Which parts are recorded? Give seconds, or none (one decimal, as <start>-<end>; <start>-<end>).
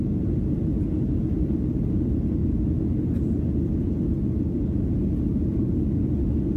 0.0-6.6